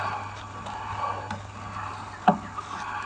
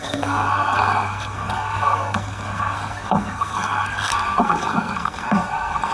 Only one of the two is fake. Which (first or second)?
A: second